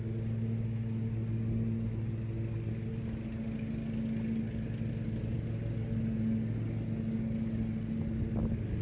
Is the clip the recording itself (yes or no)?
yes